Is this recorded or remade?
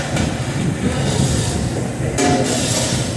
recorded